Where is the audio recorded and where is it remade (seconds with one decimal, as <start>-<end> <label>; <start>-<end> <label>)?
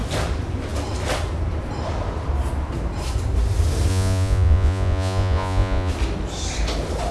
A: 0.0-3.9 recorded; 3.9-5.9 remade; 5.9-7.1 recorded